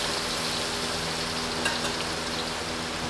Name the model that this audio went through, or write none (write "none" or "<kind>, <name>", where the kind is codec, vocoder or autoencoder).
none